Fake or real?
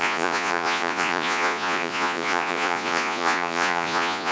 fake